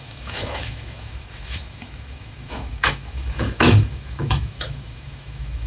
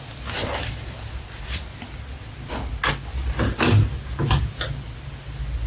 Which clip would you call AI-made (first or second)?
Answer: first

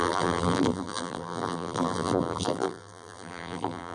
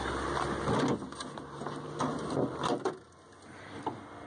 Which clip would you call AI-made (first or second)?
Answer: first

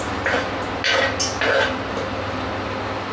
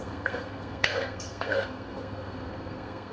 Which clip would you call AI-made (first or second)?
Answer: second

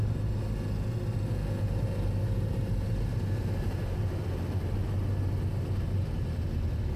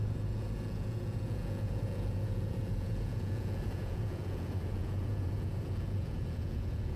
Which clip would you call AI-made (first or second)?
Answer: second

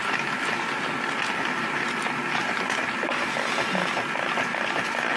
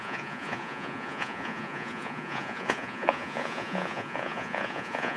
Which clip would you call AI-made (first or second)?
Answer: second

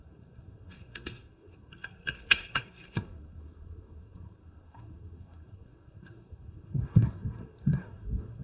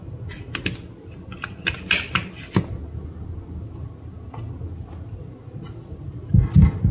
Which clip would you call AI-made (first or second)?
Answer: first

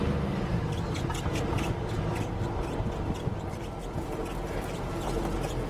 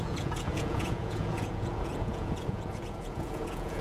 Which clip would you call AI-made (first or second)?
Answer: second